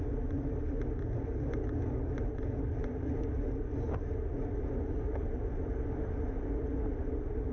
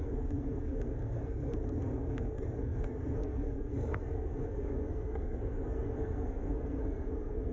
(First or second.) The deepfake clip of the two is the second